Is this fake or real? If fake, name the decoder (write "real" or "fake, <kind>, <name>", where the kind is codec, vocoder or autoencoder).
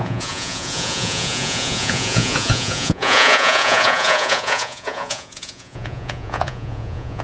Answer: fake, vocoder, Vocos